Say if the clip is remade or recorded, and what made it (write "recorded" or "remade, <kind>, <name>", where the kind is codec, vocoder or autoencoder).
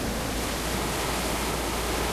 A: recorded